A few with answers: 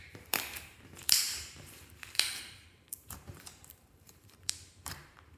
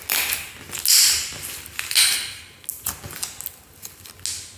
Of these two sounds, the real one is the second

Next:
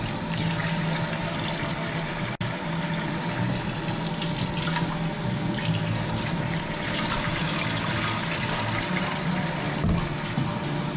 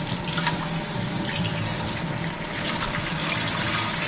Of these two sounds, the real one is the first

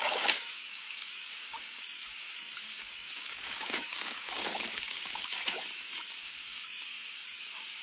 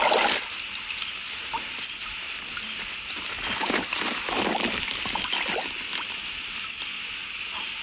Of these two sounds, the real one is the second